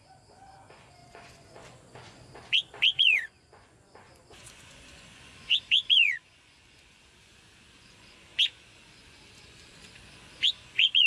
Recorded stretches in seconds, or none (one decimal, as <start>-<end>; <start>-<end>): none